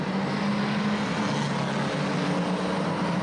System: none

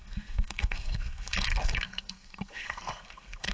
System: codec, SNAC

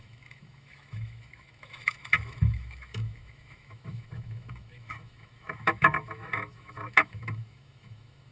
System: autoencoder, DAC-VAE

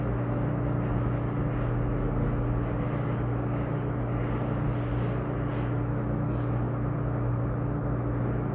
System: none